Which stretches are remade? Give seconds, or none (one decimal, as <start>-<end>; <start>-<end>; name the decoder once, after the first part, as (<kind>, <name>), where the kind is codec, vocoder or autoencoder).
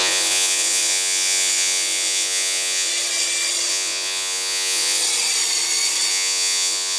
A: 0.0-2.9 (vocoder, Vocos); 3.7-5.0; 6.1-7.0